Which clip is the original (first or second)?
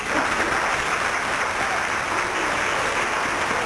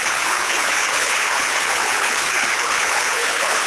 first